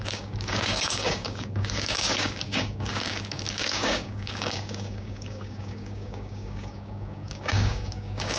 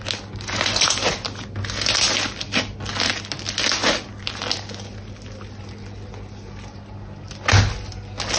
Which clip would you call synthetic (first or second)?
first